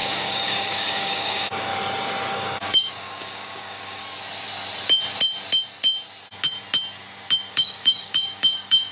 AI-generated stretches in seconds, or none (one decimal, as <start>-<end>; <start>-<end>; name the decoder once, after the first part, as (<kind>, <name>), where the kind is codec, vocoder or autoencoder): 0.0-1.7 (codec, DAC); 2.3-4.0; 7.5-8.9